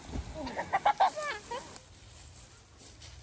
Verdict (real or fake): real